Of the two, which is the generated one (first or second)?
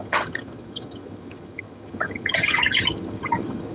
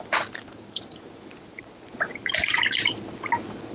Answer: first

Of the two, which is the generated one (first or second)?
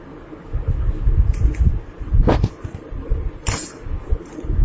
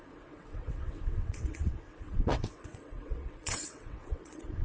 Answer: second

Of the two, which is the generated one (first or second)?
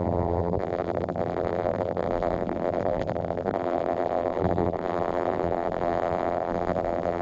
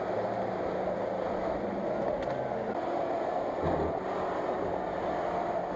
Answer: first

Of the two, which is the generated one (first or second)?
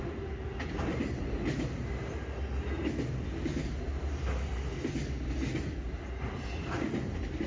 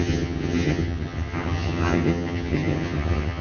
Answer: second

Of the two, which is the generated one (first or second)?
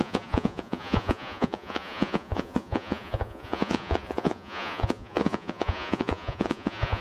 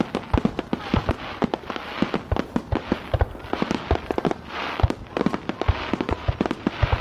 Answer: first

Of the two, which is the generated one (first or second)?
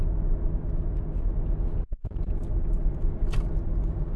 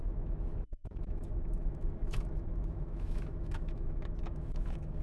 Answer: second